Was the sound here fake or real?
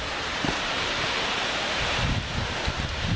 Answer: fake